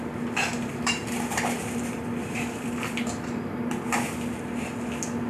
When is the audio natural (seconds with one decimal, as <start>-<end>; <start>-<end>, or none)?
0.0-0.5; 3.7-5.3